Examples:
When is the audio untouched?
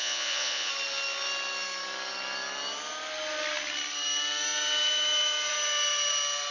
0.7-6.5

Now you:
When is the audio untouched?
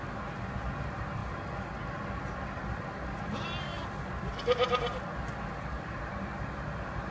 1.2-2.2; 3.7-5.6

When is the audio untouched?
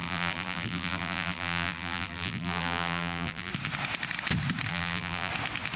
3.5-4.7; 5.3-5.8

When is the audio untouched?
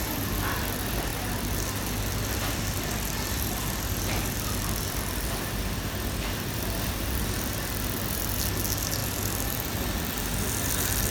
0.0-11.1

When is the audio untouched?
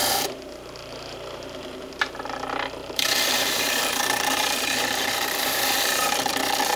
1.9-2.8; 6.3-6.8